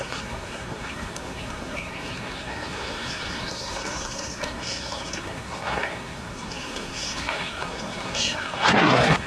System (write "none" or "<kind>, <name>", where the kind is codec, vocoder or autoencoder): codec, SNAC